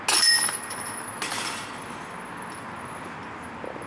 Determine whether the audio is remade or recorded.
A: recorded